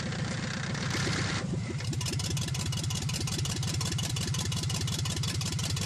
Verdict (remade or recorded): remade